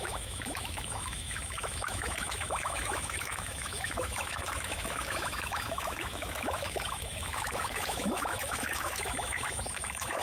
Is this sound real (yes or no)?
no